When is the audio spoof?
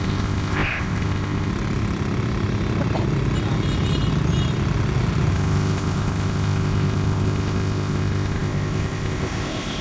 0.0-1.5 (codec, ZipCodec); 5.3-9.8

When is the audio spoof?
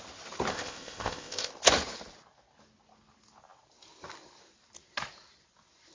0.5-1.5 (codec, ZipCodec)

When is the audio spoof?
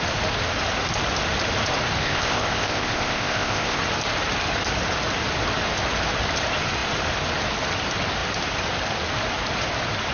2.0-3.8 (codec, ZipCodec)